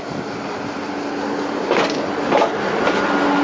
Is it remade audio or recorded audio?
recorded